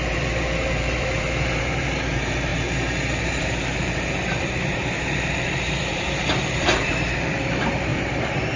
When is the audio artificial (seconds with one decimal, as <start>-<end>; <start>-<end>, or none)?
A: 0.0-2.5; 3.2-8.6